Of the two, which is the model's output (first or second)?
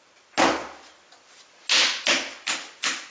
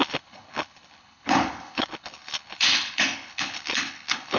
second